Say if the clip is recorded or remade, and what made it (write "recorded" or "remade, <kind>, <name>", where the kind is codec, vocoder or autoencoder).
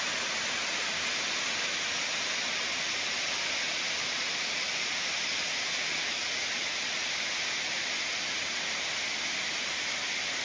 recorded